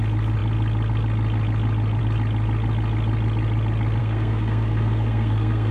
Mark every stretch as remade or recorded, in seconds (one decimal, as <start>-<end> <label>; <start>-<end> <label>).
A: 0.0-4.0 recorded; 4.0-5.7 remade